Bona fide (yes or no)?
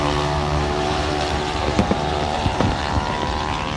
no